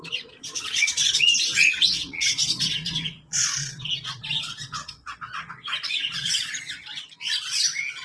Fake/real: fake